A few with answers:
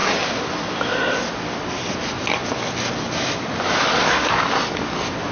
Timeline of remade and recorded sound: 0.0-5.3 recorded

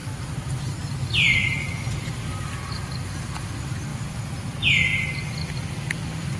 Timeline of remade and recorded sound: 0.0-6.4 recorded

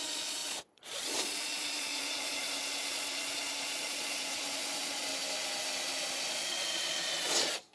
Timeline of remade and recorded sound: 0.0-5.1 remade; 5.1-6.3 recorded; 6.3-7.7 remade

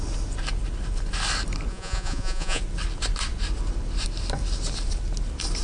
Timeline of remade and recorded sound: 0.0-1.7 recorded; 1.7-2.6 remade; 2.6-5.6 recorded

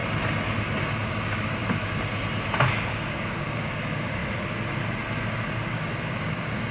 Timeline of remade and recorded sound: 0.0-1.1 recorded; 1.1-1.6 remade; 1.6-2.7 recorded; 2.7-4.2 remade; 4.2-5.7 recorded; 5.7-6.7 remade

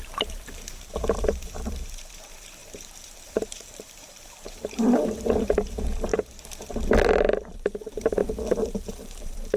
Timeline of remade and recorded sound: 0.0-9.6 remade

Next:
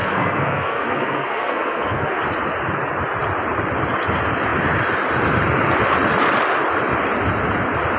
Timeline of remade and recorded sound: 0.0-2.2 remade; 2.2-8.0 recorded

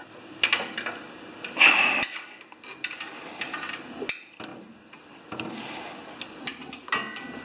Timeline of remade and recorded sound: 0.0-4.5 recorded; 4.5-5.8 remade; 5.8-7.4 recorded